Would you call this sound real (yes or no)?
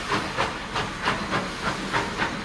yes